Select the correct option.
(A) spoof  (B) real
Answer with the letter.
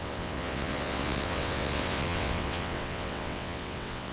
A